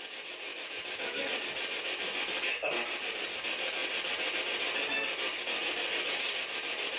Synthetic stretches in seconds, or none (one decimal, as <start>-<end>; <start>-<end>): 0.5-1.2